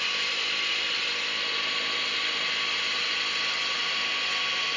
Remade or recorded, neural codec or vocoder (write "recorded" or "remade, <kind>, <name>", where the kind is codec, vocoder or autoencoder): recorded